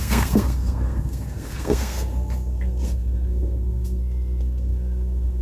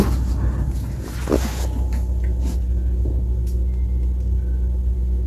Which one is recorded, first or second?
second